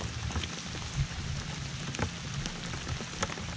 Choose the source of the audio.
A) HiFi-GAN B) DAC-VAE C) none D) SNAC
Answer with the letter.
C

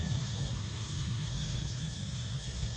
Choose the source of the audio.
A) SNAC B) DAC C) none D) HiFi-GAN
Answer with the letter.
A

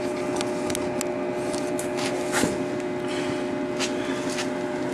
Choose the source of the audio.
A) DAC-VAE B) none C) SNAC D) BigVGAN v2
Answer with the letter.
B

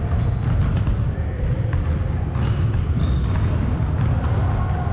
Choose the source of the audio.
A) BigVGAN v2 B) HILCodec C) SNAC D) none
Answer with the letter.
D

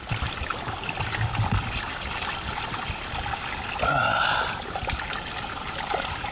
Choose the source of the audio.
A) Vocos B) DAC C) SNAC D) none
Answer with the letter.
D